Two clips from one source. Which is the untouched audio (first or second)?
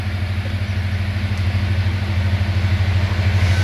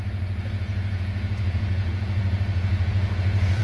first